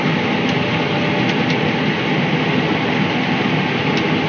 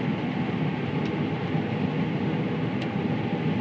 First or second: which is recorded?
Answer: first